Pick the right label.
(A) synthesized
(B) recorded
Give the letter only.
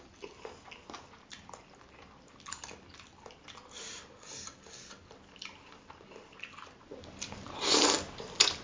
B